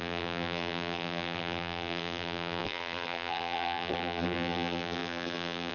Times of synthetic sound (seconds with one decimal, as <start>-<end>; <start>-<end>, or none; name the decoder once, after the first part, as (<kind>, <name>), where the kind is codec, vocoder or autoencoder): 0.0-5.7 (vocoder, BigVGAN v2)